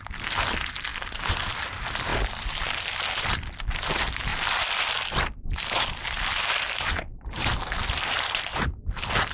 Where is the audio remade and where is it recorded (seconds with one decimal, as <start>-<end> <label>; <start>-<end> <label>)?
0.0-2.1 remade; 2.1-3.2 recorded; 3.2-9.3 remade